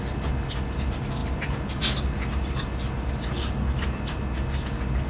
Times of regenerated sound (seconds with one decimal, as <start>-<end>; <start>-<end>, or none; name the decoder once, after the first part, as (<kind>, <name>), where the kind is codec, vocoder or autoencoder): none